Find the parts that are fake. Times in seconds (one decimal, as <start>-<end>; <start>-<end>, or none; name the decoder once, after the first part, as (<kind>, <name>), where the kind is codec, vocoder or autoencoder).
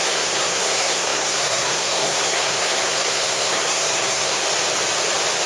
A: 0.0-4.4 (codec, SNAC)